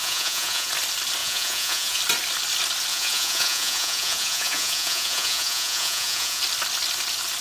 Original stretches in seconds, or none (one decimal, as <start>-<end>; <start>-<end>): 0.7-1.2; 2.0-2.9; 6.4-7.4